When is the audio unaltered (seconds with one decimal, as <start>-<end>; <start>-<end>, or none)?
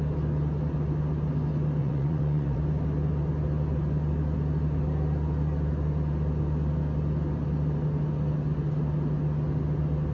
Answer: 0.0-1.8; 2.6-10.1